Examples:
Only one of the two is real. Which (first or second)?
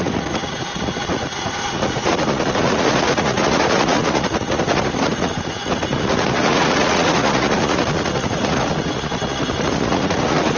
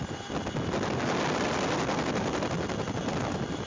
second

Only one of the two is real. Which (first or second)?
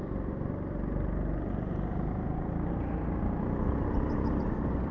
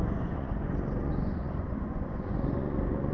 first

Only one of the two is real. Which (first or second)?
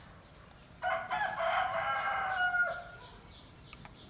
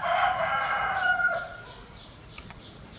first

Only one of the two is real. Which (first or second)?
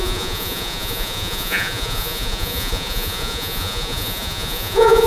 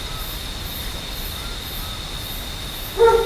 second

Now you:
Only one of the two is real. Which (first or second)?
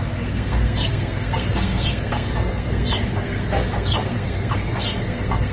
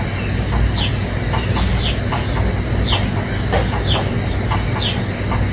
second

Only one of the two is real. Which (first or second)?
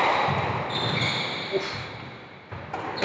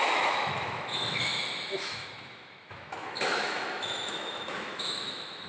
first